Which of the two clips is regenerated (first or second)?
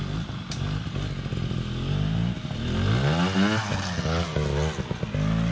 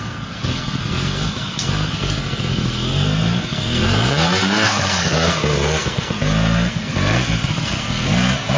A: second